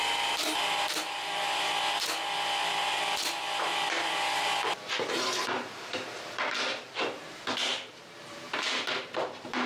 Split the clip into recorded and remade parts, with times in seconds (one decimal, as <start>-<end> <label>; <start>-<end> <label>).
0.0-7.7 remade; 7.7-8.2 recorded; 8.2-9.7 remade